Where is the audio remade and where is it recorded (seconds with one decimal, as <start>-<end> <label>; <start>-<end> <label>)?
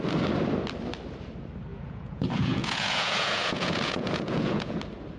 0.0-1.7 recorded; 1.7-4.8 remade; 4.8-5.2 recorded